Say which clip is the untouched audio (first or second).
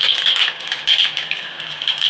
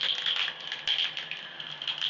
second